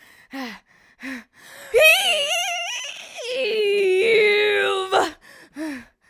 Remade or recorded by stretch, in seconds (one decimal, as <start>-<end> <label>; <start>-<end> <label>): 0.0-1.9 recorded; 1.9-3.6 remade; 3.6-6.1 recorded